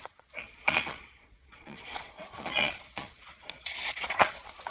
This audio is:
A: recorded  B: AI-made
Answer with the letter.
B